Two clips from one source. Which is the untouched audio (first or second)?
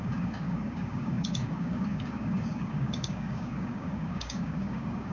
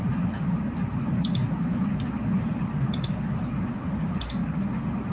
second